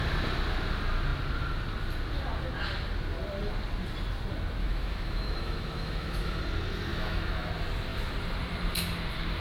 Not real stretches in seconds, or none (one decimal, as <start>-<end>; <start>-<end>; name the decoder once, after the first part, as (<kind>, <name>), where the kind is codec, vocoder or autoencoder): 4.6-6.4 (autoencoder, DAC-VAE); 6.9-7.5